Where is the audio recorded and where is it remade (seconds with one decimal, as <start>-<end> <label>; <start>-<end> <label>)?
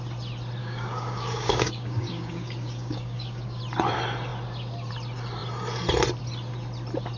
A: 0.0-0.6 recorded; 0.6-3.6 remade; 3.6-7.2 recorded